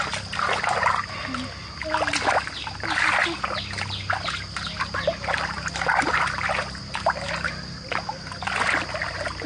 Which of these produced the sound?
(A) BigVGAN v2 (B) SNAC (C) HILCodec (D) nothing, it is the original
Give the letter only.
D